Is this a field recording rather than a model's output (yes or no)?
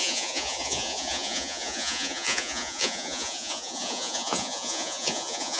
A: no